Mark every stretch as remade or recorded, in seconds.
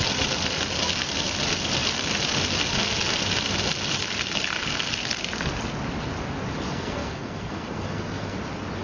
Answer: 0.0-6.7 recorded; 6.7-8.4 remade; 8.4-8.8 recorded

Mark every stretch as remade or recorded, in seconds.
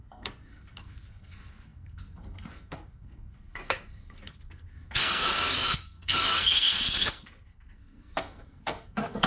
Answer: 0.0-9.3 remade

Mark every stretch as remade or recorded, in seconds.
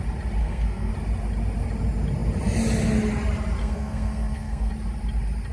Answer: 0.0-0.4 recorded; 0.4-0.9 remade; 0.9-3.6 recorded; 3.6-4.7 remade; 4.7-5.5 recorded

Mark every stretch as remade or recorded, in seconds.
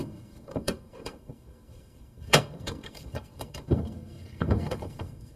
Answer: 0.0-5.4 remade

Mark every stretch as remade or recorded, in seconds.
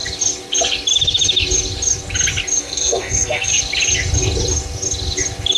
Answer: 0.0-2.6 recorded; 2.6-3.5 remade; 3.5-5.6 recorded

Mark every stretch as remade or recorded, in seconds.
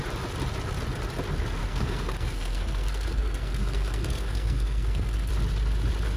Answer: 0.0-1.6 recorded; 1.6-5.3 remade; 5.3-6.2 recorded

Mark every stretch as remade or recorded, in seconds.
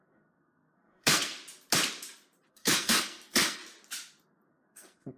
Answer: 0.0-1.4 remade; 1.4-2.5 recorded; 2.5-3.6 remade; 3.6-4.5 recorded; 4.5-5.2 remade